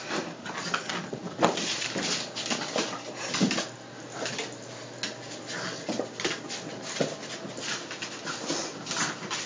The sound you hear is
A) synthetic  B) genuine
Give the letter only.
B